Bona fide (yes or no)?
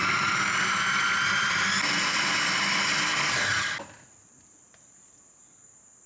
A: yes